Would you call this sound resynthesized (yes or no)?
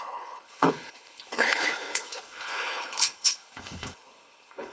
yes